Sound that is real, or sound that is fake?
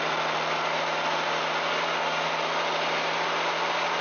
real